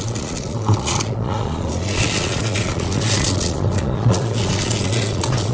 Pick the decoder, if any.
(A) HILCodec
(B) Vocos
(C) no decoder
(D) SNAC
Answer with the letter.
B